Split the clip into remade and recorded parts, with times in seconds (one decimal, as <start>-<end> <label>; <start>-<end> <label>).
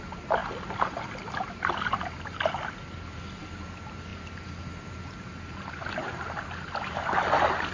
0.0-7.7 recorded